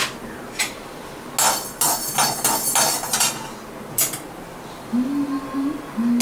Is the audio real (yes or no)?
yes